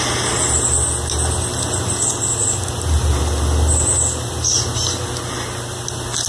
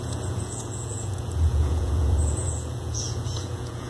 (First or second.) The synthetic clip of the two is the second